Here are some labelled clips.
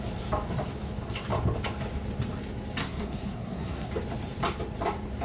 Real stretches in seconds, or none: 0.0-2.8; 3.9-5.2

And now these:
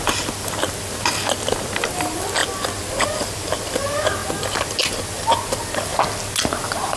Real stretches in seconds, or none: 0.0-7.0

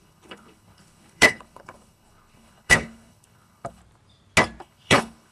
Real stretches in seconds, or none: 3.8-4.6

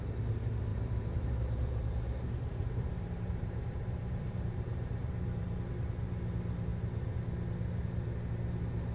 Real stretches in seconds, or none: 0.0-0.7; 5.7-8.9

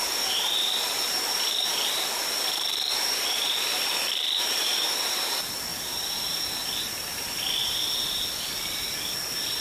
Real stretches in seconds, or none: 0.0-1.7; 4.6-5.7; 6.3-9.6

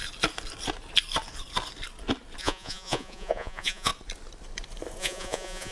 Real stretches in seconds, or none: 0.0-2.4; 3.9-5.0

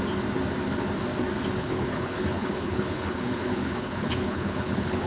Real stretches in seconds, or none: 0.0-1.6

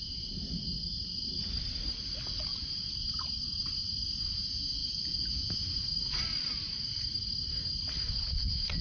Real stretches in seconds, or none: 0.0-8.8